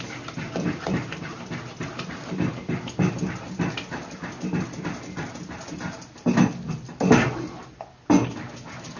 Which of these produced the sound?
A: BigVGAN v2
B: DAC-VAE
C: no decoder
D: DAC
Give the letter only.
C